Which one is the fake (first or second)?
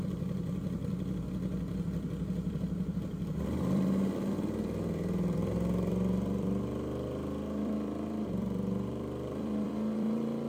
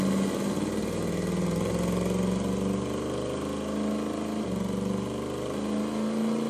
first